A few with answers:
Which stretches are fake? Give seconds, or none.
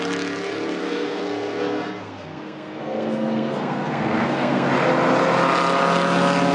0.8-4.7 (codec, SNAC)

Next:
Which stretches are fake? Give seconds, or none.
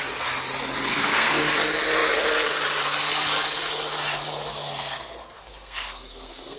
0.9-1.5 (codec, SNAC); 4.5-6.6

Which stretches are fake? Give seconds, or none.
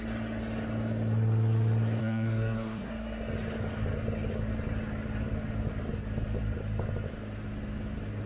2.0-2.9 (codec, SNAC)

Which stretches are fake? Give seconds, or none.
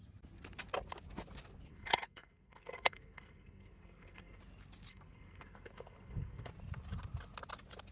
1.7-4.4 (codec, SNAC); 4.9-6.5